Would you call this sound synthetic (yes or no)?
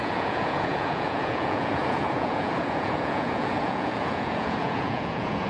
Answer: yes